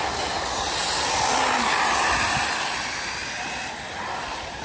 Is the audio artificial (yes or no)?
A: no